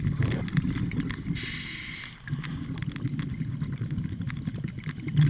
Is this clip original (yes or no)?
yes